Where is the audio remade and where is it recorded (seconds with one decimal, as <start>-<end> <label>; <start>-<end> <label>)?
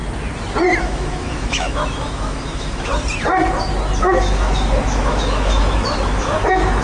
0.0-0.8 recorded; 0.8-2.9 remade; 2.9-4.0 recorded; 4.0-6.8 remade